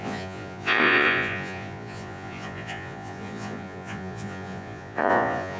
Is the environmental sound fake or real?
fake